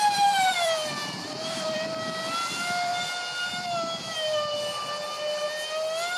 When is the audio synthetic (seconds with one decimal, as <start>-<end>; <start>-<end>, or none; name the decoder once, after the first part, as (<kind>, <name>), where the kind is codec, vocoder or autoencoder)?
0.0-2.9 (vocoder, BigVGAN v2)